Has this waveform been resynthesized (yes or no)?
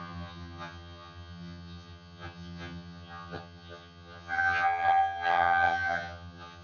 yes